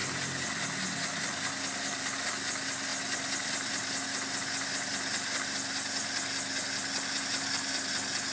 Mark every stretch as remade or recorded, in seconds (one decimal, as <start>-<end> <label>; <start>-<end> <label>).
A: 0.0-8.3 recorded